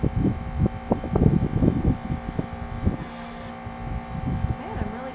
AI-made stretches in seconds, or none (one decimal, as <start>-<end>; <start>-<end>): 3.0-3.5